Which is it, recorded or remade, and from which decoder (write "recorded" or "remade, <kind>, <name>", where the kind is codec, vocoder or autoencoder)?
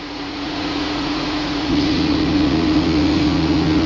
remade, vocoder, Vocos